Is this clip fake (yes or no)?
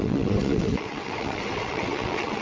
yes